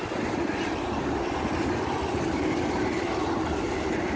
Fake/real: real